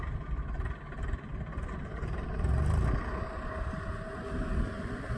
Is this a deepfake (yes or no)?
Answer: no